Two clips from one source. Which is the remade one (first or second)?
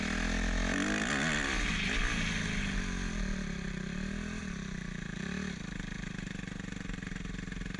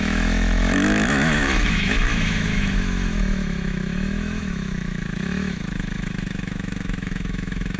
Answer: second